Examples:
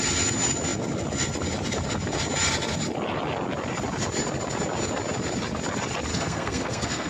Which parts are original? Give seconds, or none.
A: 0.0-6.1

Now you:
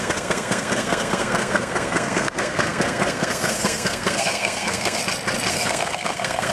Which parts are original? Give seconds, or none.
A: 5.0-5.5